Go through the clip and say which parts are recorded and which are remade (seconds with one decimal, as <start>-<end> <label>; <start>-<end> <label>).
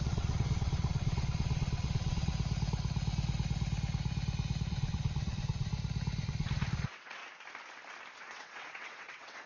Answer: 0.0-2.3 remade; 2.3-4.7 recorded; 4.7-5.7 remade; 5.7-6.2 recorded; 6.2-7.2 remade; 7.2-8.2 recorded; 8.2-9.5 remade